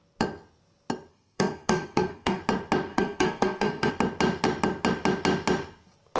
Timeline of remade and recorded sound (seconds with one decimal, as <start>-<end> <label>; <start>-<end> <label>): 0.0-1.1 recorded; 1.1-2.4 remade; 2.4-2.9 recorded; 2.9-3.9 remade; 3.9-6.2 recorded